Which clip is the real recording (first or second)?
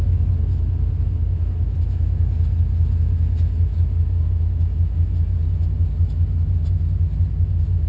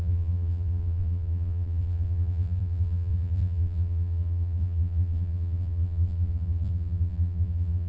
first